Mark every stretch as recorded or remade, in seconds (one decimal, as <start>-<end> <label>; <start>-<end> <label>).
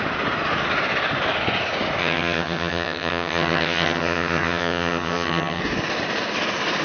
0.0-2.0 recorded; 2.0-5.6 remade; 5.6-6.8 recorded